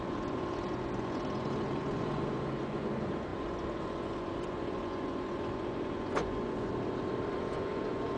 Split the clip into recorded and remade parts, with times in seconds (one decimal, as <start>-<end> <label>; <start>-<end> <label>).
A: 0.0-6.7 remade; 6.7-7.3 recorded; 7.3-8.2 remade

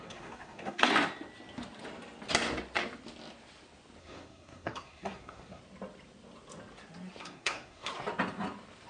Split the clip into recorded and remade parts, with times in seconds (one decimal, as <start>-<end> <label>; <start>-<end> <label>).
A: 0.0-0.9 remade; 0.9-4.0 recorded; 4.0-5.6 remade; 5.6-7.2 recorded; 7.2-7.9 remade; 7.9-8.9 recorded

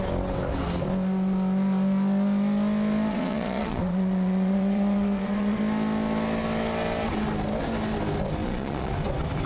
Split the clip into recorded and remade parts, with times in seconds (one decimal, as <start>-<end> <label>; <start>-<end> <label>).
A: 0.0-3.1 recorded; 3.1-5.6 remade; 5.6-8.4 recorded; 8.4-8.9 remade; 8.9-9.5 recorded

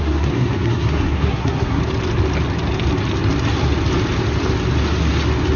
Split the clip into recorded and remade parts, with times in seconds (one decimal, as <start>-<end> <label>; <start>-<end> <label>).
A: 0.0-1.8 remade; 1.8-5.6 recorded

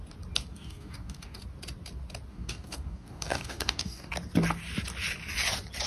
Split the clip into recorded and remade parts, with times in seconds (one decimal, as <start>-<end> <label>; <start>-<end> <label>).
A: 0.0-0.5 recorded; 0.5-1.4 remade; 1.4-2.3 recorded; 2.3-4.1 remade; 4.1-5.9 recorded

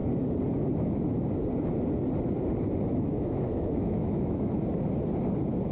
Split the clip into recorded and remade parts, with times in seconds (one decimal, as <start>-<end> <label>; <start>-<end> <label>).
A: 0.0-2.9 recorded; 2.9-4.5 remade; 4.5-5.7 recorded